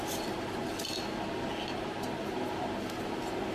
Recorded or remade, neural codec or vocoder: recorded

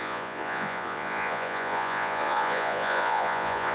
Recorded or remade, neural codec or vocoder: remade, vocoder, Vocos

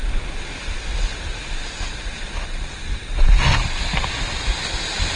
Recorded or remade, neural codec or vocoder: recorded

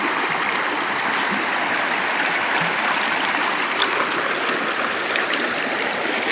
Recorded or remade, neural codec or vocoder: recorded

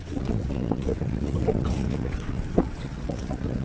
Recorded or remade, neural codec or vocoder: remade, vocoder, WaveNeXt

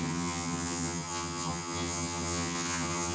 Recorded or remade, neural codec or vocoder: remade, vocoder, HiFi-GAN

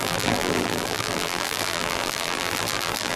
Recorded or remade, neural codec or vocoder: remade, vocoder, BigVGAN v2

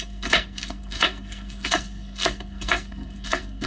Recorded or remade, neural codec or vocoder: remade, codec, SNAC